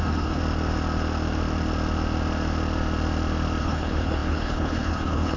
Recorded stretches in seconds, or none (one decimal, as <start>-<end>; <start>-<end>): 0.4-3.6